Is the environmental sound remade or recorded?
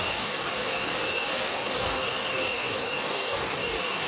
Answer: remade